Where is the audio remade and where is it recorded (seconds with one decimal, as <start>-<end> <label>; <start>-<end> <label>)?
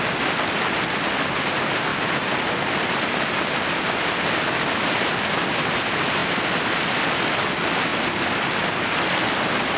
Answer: 0.0-1.9 recorded; 1.9-4.1 remade; 4.1-6.2 recorded; 6.2-6.8 remade; 6.8-9.8 recorded